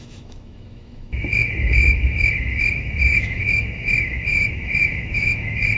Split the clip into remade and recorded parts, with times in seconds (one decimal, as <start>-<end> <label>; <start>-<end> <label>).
0.0-5.8 remade